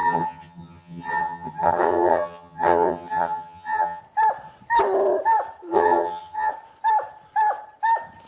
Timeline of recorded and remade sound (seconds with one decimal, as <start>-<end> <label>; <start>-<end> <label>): 0.0-4.0 remade; 4.0-5.7 recorded; 5.7-6.5 remade; 6.5-8.3 recorded